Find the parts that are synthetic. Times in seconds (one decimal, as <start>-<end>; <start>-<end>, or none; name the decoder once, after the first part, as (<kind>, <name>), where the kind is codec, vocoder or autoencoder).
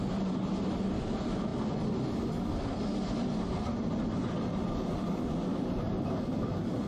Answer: none